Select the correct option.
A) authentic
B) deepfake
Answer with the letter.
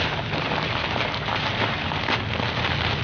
A